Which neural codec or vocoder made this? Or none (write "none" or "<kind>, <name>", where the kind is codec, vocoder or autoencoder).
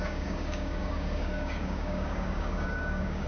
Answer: codec, DAC